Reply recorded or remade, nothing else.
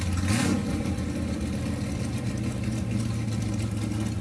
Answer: recorded